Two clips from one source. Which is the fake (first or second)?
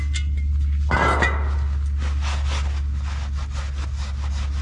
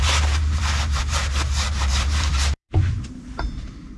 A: second